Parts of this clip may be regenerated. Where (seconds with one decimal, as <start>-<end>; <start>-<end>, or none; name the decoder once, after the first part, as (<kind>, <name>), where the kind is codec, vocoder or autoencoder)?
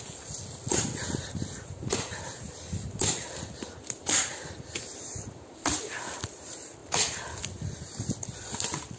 none